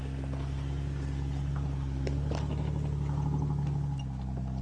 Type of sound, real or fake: real